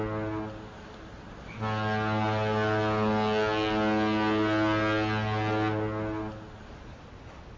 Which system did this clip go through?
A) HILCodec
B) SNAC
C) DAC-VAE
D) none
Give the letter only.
D